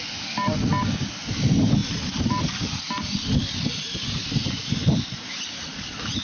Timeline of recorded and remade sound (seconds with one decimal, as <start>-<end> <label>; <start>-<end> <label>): 0.0-6.2 recorded